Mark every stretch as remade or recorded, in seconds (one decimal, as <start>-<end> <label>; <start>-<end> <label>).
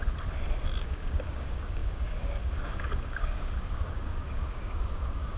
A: 0.0-0.8 recorded; 0.8-5.4 remade